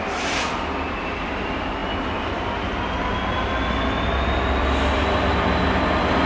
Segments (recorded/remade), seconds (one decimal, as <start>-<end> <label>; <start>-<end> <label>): 0.0-6.3 recorded